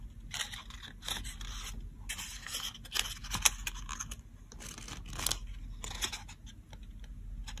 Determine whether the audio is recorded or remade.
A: recorded